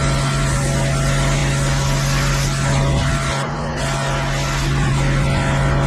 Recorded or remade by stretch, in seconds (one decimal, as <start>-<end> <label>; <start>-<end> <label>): 0.0-5.9 recorded